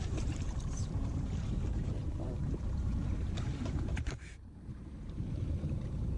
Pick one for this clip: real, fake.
fake